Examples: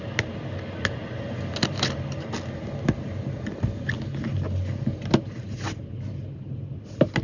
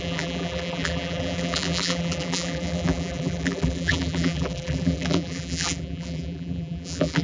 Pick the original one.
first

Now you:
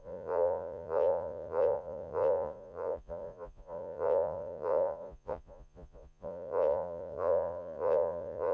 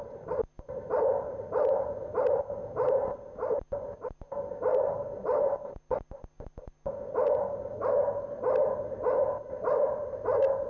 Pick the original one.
second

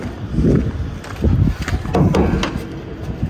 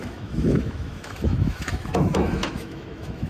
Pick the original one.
first